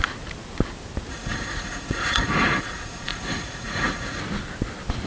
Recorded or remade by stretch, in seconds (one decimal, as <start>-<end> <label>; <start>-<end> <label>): 0.0-1.1 recorded; 1.1-4.2 remade; 4.2-5.1 recorded